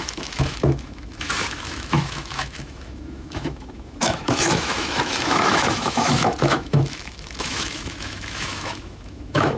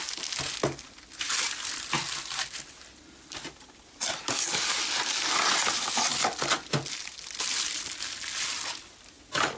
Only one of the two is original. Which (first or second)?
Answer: second